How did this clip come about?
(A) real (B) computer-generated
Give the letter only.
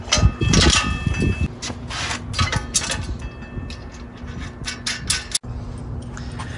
A